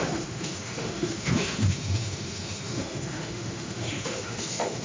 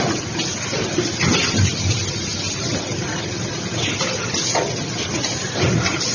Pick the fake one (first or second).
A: first